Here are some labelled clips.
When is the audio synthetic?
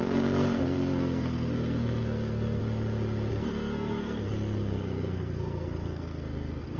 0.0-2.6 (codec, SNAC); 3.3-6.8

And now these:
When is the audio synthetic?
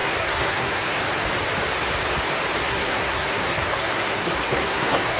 0.0-1.0 (codec, SNAC); 2.7-5.2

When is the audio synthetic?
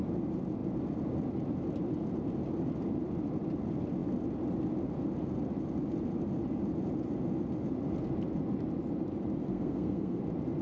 9.5-10.2 (codec, SNAC)